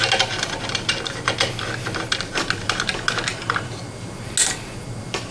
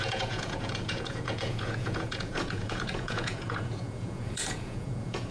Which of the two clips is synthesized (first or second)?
second